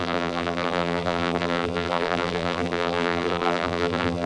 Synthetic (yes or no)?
yes